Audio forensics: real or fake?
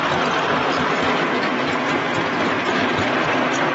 real